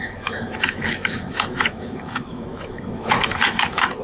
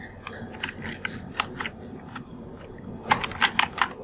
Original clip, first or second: second